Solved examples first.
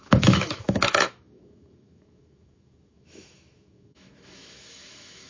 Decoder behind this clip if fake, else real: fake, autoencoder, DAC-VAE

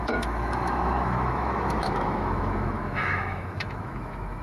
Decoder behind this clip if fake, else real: fake, autoencoder, DAC-VAE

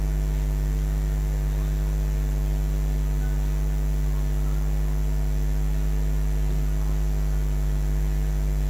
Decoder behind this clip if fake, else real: real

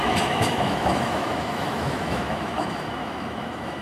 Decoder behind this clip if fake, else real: fake, autoencoder, DAC-VAE